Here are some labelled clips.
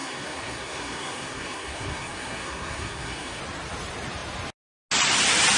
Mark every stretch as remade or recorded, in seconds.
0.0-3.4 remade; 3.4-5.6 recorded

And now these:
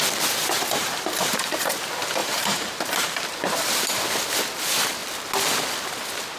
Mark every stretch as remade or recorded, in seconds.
0.0-0.8 recorded; 0.8-1.7 remade; 1.7-2.2 recorded; 2.2-4.0 remade; 4.0-6.4 recorded

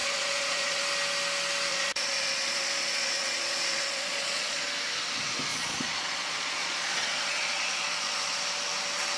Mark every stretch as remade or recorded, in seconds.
0.0-0.8 remade; 0.8-1.7 recorded; 1.7-4.6 remade; 4.6-5.5 recorded; 5.5-8.4 remade; 8.4-9.2 recorded

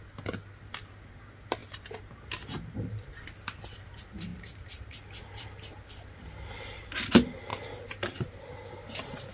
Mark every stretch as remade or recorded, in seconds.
0.0-1.6 recorded; 1.6-2.7 remade; 2.7-4.3 recorded; 4.3-5.0 remade; 5.0-9.3 recorded

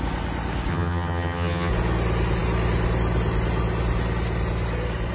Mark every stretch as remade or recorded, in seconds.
0.0-0.7 recorded; 0.7-1.7 remade; 1.7-5.1 recorded

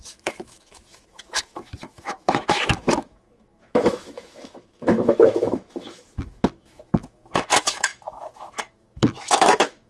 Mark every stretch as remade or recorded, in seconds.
0.0-9.9 remade